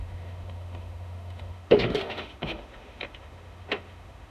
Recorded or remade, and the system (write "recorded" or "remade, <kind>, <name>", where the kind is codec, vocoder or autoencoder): remade, autoencoder, DAC-VAE